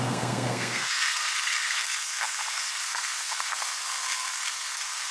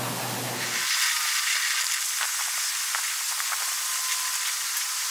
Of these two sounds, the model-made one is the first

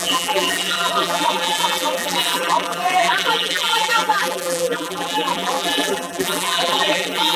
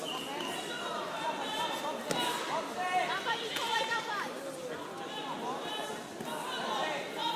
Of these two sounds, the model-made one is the first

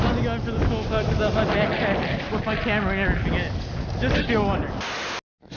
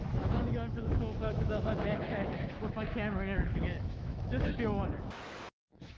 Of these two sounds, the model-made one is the second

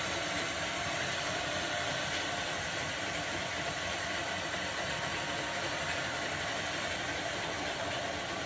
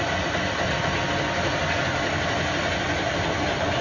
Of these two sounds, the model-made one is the first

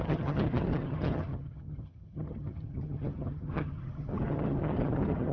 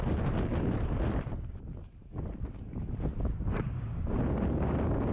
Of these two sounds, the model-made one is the first